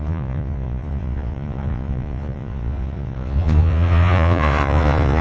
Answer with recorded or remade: remade